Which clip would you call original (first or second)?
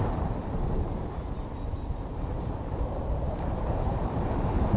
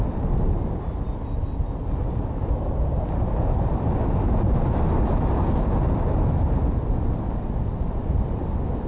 second